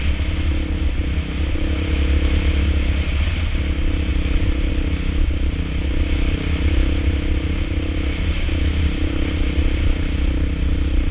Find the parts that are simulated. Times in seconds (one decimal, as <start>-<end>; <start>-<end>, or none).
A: 4.1-4.7

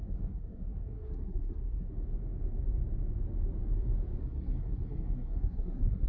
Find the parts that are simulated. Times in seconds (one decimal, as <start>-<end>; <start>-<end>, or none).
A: 0.0-1.9; 4.2-6.1

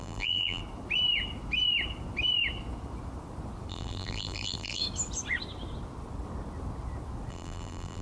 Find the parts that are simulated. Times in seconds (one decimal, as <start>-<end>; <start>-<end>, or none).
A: 0.0-0.6; 3.7-4.8; 7.3-8.0

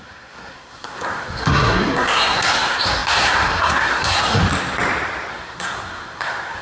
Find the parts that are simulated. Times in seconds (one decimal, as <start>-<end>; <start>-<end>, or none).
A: 0.0-4.4; 5.3-6.6